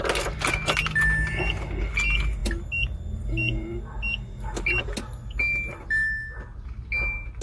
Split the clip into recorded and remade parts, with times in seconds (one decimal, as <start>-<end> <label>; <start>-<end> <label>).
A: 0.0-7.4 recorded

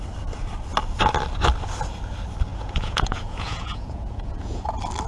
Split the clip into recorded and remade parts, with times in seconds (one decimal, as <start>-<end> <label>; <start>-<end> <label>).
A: 0.0-2.5 recorded; 2.5-4.6 remade; 4.6-5.1 recorded

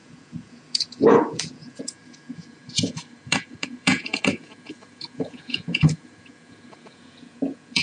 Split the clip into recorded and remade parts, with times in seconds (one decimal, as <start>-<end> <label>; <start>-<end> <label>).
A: 0.0-7.8 remade